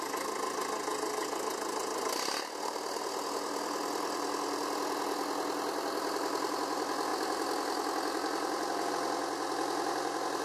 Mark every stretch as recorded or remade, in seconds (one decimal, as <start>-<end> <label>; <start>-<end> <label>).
0.0-10.4 recorded